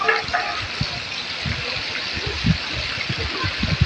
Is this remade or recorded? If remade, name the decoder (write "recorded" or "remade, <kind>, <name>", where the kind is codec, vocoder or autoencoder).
recorded